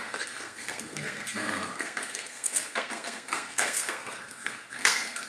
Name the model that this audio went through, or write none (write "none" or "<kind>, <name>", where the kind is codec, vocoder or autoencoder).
codec, SNAC